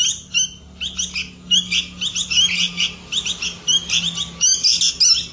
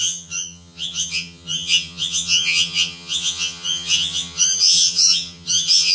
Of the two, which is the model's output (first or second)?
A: second